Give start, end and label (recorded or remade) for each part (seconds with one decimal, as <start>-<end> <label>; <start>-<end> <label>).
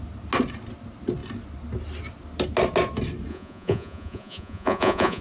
0.0-3.3 recorded; 3.3-5.2 remade